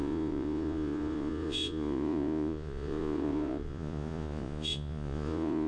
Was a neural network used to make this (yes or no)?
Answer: yes